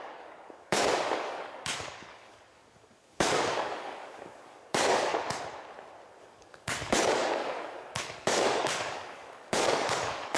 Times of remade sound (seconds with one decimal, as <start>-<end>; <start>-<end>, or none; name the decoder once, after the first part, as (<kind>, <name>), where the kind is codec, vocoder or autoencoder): 0.0-5.1 (codec, DAC); 6.2-10.4